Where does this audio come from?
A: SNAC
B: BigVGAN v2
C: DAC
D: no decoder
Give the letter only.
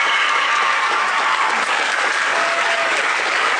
C